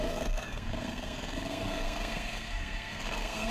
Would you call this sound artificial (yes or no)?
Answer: yes